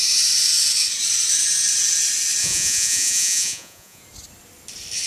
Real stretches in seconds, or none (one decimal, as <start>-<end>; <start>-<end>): 0.0-2.4; 4.0-5.1